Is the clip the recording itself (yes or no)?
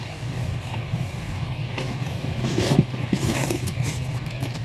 no